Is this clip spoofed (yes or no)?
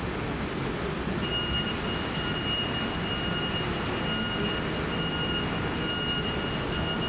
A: no